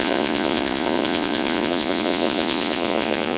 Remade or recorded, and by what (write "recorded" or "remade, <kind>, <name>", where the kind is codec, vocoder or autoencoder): remade, vocoder, Vocos